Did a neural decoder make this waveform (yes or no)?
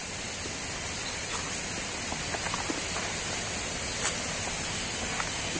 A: no